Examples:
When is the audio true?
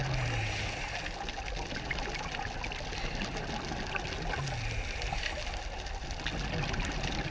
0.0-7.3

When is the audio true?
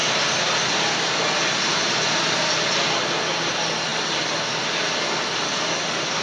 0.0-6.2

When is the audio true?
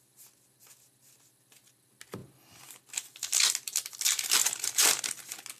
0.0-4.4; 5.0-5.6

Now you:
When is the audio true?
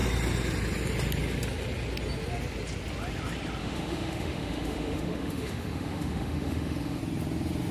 0.0-3.6; 7.0-7.7